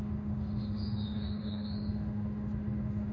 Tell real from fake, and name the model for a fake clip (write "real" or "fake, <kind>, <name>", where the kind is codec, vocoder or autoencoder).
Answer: fake, autoencoder, DAC-VAE